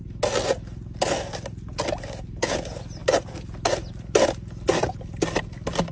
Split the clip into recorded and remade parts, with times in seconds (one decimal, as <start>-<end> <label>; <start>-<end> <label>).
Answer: 0.0-5.9 recorded